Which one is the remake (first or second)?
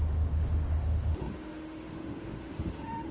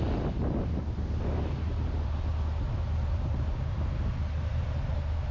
first